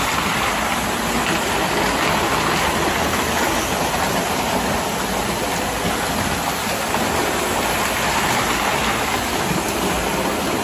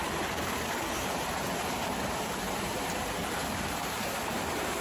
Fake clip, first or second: second